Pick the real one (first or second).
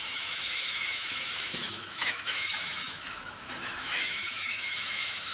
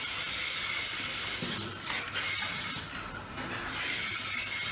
second